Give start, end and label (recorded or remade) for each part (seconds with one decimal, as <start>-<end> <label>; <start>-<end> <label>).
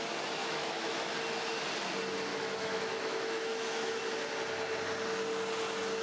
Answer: 0.0-0.4 recorded; 0.4-1.1 remade; 1.1-2.3 recorded; 2.3-4.0 remade; 4.0-6.0 recorded